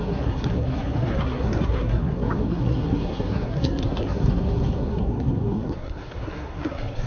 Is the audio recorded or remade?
remade